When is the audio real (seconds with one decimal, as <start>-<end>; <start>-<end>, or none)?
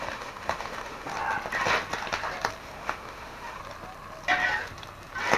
1.1-2.6; 3.6-5.4